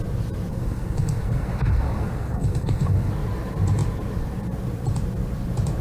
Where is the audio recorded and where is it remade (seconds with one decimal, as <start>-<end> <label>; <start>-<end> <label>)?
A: 0.0-0.5 recorded; 0.5-3.1 remade; 3.1-5.8 recorded